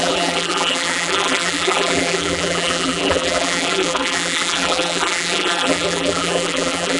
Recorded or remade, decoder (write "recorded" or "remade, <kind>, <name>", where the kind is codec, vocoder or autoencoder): remade, vocoder, BigVGAN v2